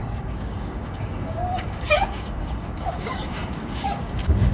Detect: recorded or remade remade